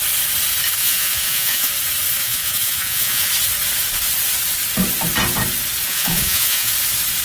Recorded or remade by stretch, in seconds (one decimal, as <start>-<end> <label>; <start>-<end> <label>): 0.0-0.8 recorded; 0.8-1.7 remade; 1.7-2.2 recorded; 2.2-3.3 remade; 3.3-5.8 recorded; 5.8-6.7 remade; 6.7-7.2 recorded